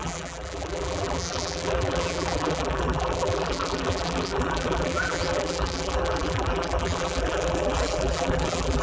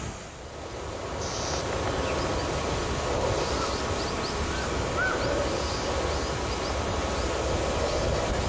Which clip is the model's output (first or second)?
first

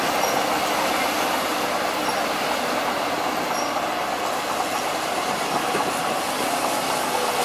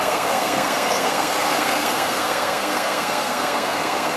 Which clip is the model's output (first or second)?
second